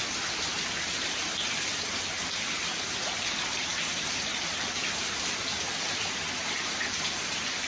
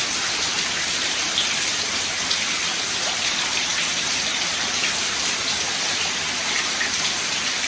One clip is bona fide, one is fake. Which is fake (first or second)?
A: second